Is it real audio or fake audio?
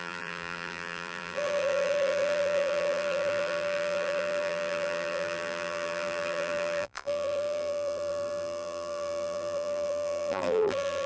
fake